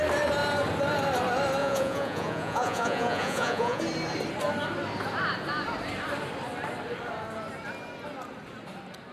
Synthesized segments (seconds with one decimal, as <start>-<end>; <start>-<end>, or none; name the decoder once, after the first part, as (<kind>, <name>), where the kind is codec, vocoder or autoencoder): 1.6-3.8 (vocoder, Vocos)